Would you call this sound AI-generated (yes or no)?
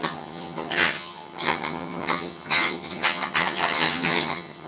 yes